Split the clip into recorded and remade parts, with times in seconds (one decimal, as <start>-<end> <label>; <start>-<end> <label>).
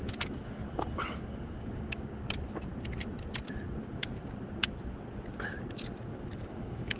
0.0-0.6 remade; 0.6-1.2 recorded; 1.2-2.2 remade; 2.2-6.4 recorded; 6.4-7.0 remade